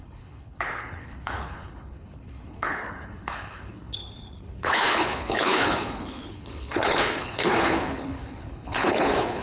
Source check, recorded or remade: remade